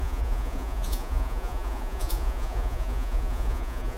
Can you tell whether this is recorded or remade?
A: remade